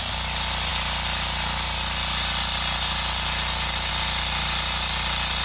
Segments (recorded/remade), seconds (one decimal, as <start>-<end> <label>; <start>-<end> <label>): 0.0-5.4 recorded